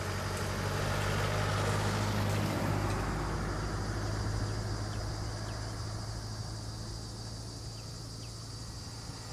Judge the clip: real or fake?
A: real